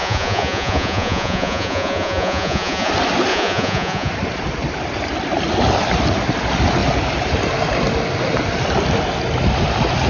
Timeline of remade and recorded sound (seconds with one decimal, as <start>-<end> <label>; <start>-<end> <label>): 0.0-2.9 remade; 2.9-3.3 recorded; 3.3-4.1 remade; 4.1-10.1 recorded